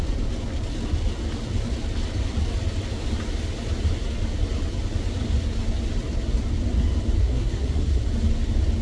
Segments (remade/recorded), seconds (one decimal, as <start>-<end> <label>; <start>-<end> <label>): 0.0-7.2 recorded; 7.2-8.0 remade; 8.0-8.8 recorded